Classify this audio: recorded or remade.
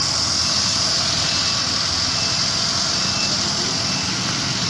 recorded